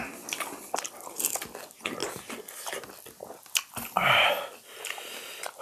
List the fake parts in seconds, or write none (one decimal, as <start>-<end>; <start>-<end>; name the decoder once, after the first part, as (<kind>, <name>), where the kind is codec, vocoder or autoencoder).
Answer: none